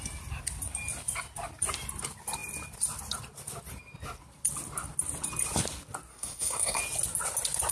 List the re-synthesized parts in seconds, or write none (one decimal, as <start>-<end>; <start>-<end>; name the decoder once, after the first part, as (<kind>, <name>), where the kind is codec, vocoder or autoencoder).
6.1-6.8 (codec, SNAC)